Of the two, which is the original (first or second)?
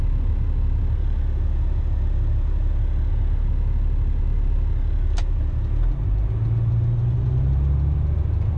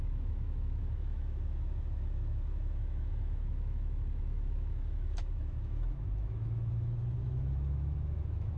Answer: first